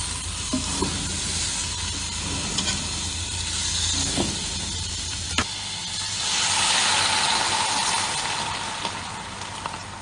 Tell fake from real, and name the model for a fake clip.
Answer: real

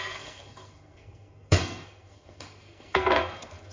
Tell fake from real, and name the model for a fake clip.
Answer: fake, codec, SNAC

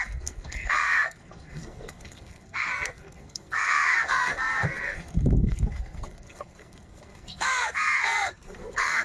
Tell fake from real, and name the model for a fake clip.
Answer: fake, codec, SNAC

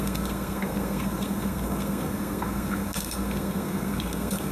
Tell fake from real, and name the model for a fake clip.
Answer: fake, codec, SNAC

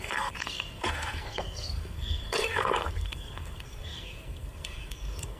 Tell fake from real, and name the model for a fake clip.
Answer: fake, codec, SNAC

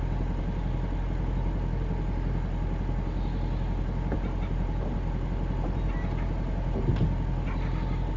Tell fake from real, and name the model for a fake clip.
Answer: real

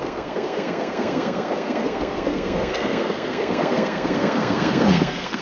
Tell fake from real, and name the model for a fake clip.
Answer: fake, codec, SNAC